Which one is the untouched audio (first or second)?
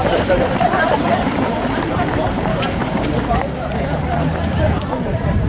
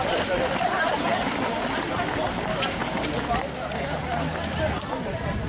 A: second